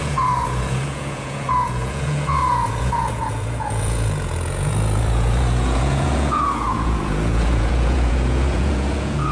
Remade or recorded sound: remade